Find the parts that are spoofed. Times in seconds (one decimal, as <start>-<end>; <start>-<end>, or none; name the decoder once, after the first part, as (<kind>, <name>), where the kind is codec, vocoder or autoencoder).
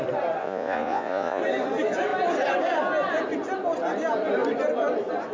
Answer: 0.4-1.4 (vocoder, Vocos)